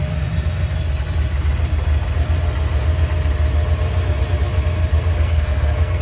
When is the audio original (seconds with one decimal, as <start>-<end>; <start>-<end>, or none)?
0.0-4.9